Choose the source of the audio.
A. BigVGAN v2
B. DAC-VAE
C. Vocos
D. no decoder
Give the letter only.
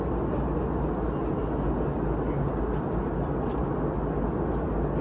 D